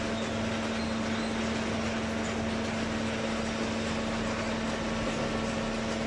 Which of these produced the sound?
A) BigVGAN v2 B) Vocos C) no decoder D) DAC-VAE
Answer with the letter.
C